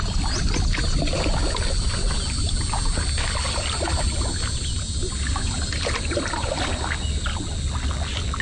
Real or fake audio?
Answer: real